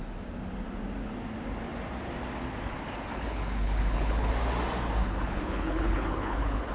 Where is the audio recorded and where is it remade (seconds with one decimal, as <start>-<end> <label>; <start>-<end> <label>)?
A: 0.0-3.1 recorded; 3.1-4.3 remade; 4.3-5.0 recorded; 5.0-6.7 remade